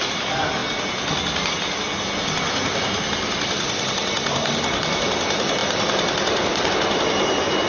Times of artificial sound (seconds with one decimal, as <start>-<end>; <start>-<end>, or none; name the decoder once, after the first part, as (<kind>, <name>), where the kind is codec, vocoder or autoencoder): 5.6-6.7 (vocoder, BigVGAN v2)